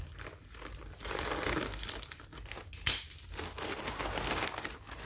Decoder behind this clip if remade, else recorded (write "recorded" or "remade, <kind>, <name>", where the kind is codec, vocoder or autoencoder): recorded